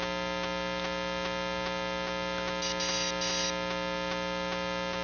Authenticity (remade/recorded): recorded